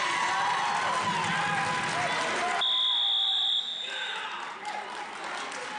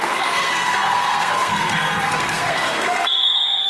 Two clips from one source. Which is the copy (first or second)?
second